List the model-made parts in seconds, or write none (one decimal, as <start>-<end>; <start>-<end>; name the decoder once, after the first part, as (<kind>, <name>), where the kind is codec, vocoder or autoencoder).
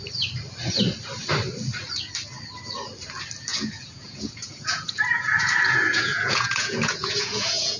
3.5-7.8 (vocoder, Vocos)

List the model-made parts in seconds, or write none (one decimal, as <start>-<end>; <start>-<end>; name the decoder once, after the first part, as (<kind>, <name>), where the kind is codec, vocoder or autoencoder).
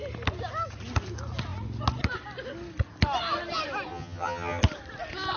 3.9-4.6 (vocoder, HiFi-GAN)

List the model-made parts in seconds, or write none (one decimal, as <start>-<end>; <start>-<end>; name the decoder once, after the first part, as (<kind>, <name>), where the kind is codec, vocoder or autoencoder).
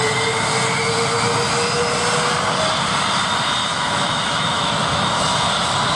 3.6-5.5 (autoencoder, DAC-VAE)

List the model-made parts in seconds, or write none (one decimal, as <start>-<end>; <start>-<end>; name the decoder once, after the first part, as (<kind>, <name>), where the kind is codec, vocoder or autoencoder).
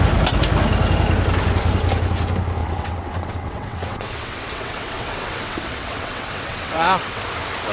2.6-7.2 (vocoder, WaveNeXt)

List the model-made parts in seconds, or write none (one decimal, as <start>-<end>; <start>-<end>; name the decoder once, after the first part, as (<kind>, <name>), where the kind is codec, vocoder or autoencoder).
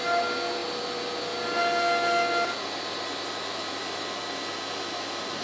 none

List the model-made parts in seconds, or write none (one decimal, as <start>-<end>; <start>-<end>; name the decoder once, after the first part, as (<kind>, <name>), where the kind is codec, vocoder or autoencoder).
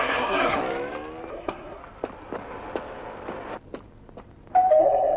0.0-0.6 (codec, SNAC); 1.3-1.8; 4.8-5.2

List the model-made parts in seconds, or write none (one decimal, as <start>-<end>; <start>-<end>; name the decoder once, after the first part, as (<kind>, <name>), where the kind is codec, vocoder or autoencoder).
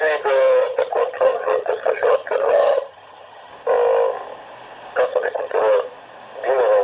0.6-3.5 (vocoder, HiFi-GAN); 5.1-5.6